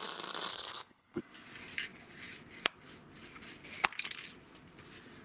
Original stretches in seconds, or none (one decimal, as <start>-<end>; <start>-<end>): 0.0-0.5; 1.2-5.2